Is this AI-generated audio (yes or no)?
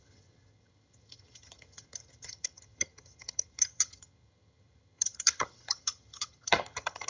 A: yes